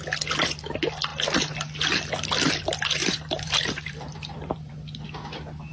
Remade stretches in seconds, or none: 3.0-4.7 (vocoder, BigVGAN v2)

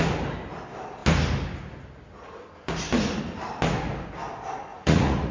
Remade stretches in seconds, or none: 4.7-5.3 (vocoder, Vocos)

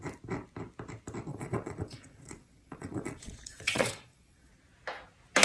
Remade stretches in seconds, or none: 1.3-4.5 (vocoder, Vocos)